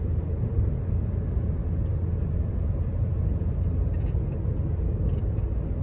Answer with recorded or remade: recorded